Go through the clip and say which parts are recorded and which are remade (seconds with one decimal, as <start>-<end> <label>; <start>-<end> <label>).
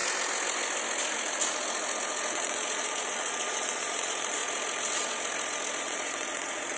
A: 0.0-2.3 recorded; 2.3-4.4 remade; 4.4-5.8 recorded; 5.8-6.8 remade